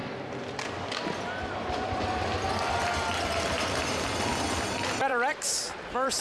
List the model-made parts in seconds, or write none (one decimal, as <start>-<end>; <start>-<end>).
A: 0.0-1.0; 5.1-6.2

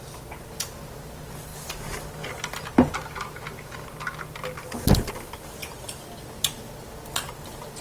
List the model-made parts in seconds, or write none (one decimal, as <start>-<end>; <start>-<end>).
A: 5.6-6.6